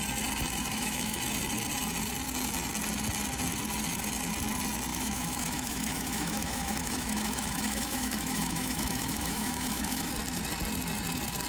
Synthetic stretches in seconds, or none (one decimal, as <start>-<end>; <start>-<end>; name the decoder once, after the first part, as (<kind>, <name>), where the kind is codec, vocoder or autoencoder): 0.7-1.2 (autoencoder, DAC-VAE); 4.9-10.1